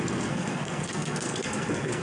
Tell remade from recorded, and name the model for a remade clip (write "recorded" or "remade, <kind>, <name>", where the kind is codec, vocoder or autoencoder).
remade, codec, SNAC